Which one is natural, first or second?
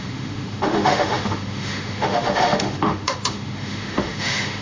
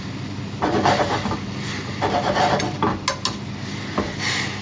second